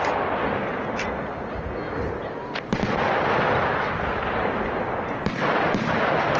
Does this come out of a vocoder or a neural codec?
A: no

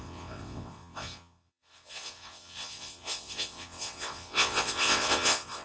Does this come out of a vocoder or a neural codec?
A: yes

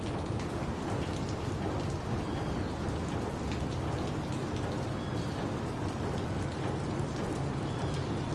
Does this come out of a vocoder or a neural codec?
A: no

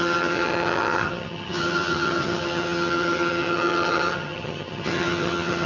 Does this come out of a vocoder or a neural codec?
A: yes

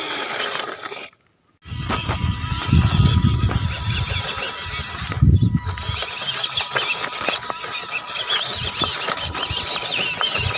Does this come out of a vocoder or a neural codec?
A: no